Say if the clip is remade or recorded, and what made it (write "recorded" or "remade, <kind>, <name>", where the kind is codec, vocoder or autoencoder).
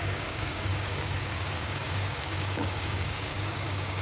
remade, codec, DAC